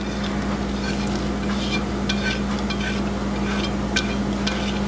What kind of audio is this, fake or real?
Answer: real